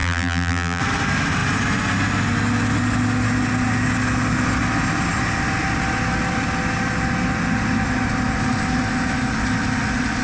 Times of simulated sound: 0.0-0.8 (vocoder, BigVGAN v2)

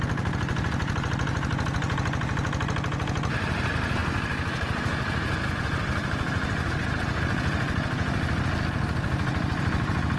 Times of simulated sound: none

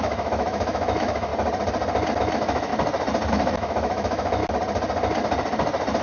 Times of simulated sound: 0.0-1.3 (autoencoder, DAC-VAE); 2.2-2.7; 3.3-4.4